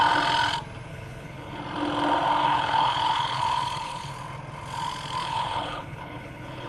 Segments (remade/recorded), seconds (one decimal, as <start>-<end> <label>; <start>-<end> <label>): 0.0-0.9 recorded; 0.9-1.6 remade; 1.6-2.4 recorded; 2.4-4.1 remade; 4.1-5.2 recorded; 5.2-6.7 remade